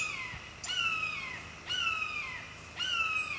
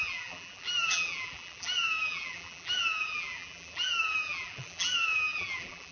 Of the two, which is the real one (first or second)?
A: first